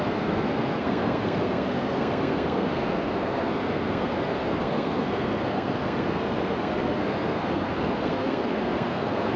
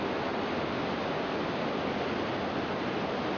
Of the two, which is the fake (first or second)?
first